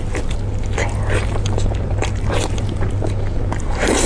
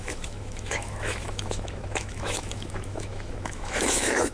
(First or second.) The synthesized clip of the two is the second